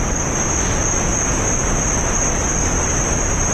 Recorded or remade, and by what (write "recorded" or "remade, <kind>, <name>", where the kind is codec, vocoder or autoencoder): recorded